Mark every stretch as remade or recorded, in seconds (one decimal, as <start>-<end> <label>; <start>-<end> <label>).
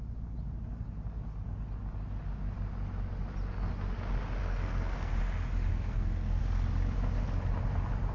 0.0-4.4 recorded; 4.4-5.1 remade; 5.1-5.7 recorded; 5.7-6.4 remade; 6.4-8.1 recorded